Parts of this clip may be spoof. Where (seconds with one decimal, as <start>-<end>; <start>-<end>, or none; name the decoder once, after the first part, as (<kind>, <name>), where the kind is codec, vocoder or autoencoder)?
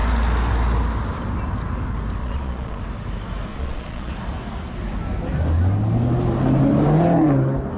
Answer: 2.2-2.8 (vocoder, Vocos); 3.5-4.1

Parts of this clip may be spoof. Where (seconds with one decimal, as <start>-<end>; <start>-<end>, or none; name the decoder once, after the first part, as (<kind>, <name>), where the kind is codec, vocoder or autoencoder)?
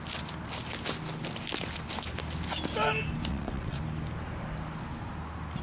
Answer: 3.3-3.8 (vocoder, WaveNeXt)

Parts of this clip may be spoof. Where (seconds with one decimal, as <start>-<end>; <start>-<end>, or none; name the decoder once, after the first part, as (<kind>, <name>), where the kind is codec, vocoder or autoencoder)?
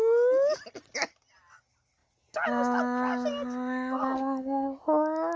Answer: none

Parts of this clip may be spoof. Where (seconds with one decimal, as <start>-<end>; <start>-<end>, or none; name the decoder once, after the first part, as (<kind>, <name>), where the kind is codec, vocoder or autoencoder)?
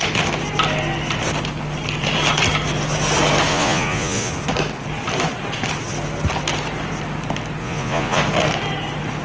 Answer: 3.5-4.3 (vocoder, Vocos); 7.6-8.2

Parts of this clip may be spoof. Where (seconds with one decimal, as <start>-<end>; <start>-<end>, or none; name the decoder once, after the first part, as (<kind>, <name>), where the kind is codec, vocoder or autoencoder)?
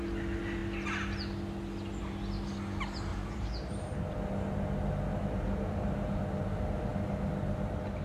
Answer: 3.1-4.0 (vocoder, BigVGAN v2); 5.1-6.2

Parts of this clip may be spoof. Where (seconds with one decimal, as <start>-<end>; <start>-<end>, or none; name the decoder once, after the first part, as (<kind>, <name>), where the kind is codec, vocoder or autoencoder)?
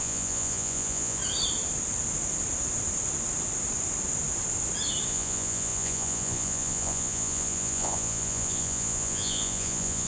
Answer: 0.0-1.2 (vocoder, Vocos); 5.1-10.1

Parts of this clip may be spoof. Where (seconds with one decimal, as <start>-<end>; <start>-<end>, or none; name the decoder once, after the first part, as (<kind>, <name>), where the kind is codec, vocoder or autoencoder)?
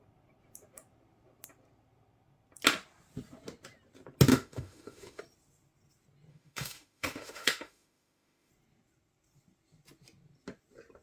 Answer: 4.3-5.2 (autoencoder, DAC-VAE); 6.3-8.5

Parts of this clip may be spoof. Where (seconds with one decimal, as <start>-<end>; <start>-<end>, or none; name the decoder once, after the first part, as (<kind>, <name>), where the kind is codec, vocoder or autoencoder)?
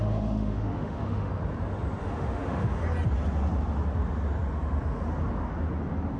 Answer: 0.0-1.3 (autoencoder, DAC-VAE); 2.0-2.8